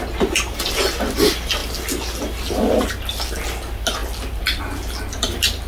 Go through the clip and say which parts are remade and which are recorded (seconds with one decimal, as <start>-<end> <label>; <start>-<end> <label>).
0.0-5.7 recorded